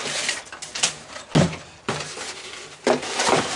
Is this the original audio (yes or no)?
yes